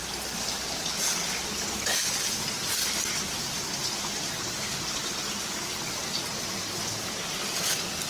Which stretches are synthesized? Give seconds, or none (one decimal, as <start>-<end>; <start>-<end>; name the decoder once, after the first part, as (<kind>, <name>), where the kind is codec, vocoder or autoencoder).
0.0-3.4 (vocoder, BigVGAN v2)